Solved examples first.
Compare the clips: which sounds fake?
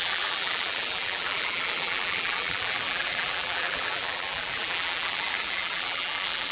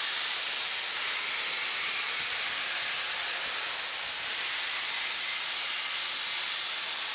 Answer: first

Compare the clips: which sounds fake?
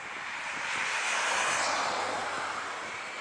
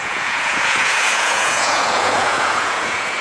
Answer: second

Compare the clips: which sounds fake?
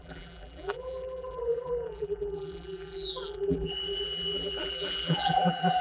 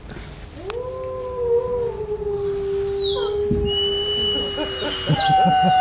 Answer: first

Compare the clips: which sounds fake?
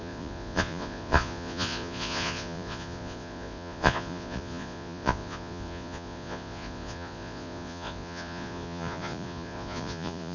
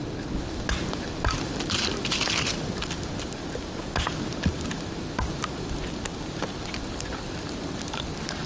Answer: first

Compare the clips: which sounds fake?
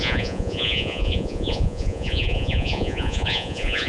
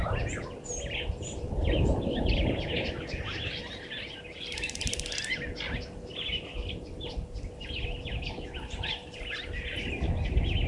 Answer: first